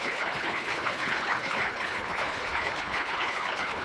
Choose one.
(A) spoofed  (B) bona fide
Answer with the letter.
A